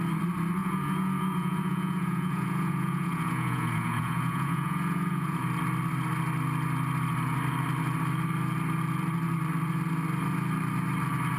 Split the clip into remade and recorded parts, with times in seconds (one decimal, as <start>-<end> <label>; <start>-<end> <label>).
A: 0.0-0.6 recorded; 0.6-5.4 remade; 5.4-11.4 recorded

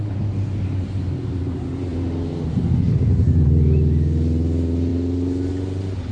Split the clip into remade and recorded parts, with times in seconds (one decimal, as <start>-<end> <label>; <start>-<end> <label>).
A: 0.0-6.1 recorded

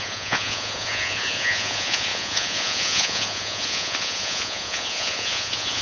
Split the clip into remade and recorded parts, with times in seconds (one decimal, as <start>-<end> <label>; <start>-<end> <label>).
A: 0.0-5.8 remade

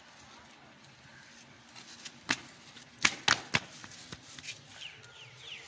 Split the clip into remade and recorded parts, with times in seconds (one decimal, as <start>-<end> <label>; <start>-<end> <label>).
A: 0.0-5.7 recorded

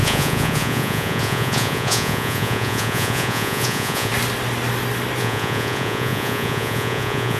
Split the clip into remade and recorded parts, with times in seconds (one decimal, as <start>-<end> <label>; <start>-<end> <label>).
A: 0.0-4.1 remade; 4.1-5.2 recorded; 5.2-7.4 remade

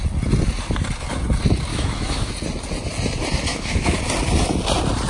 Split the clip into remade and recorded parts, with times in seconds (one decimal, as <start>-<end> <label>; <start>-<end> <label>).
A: 0.0-1.7 recorded; 1.7-2.3 remade; 2.3-3.5 recorded; 3.5-4.0 remade; 4.0-5.1 recorded

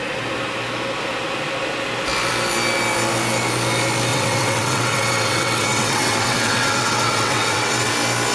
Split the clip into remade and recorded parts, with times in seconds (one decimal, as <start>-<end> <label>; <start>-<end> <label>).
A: 0.0-4.1 recorded; 4.1-7.9 remade; 7.9-8.3 recorded